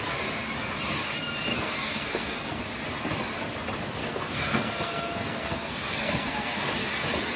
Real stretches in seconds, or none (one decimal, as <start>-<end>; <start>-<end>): 0.0-1.5; 2.6-4.0; 6.6-7.4